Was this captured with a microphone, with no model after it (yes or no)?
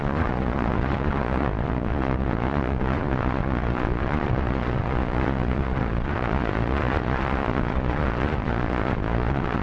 no